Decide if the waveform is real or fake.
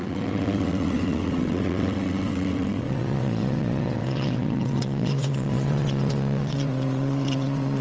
fake